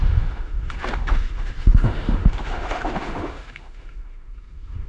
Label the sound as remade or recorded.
remade